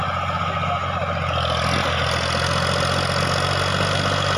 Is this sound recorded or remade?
recorded